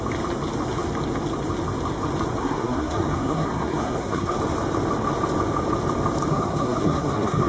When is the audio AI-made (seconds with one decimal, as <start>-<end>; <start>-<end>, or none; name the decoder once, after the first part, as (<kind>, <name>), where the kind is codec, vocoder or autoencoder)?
2.4-4.4 (codec, SNAC); 6.3-7.5